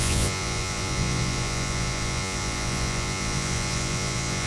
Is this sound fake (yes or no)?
yes